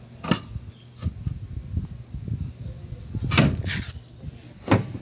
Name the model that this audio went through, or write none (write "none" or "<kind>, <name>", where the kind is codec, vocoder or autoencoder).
none